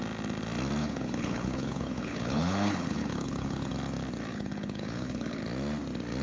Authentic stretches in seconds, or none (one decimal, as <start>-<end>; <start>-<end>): 0.0-0.8; 3.7-4.3; 5.4-6.2